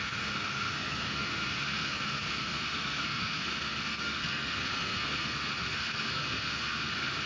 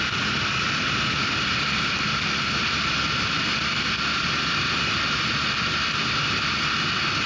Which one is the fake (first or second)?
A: first